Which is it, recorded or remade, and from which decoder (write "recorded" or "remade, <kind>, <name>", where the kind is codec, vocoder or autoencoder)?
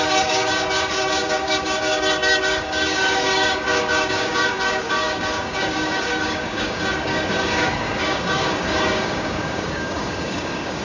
remade, codec, DAC